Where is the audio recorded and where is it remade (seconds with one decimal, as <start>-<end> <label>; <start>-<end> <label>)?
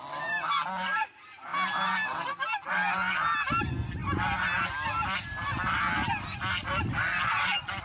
0.0-7.8 recorded